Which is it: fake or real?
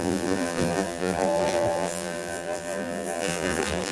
fake